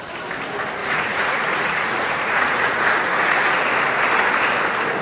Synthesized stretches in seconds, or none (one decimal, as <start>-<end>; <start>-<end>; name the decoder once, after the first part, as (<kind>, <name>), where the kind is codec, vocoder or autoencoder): 0.8-3.8 (vocoder, Vocos)